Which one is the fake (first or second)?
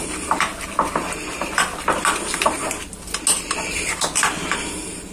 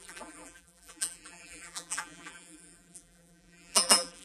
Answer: second